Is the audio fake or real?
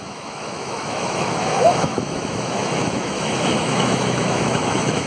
fake